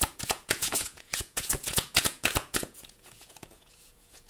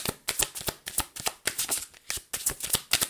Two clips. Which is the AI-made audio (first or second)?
first